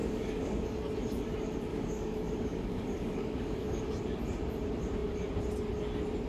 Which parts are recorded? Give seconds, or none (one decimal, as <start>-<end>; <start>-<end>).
0.6-1.7; 3.8-6.3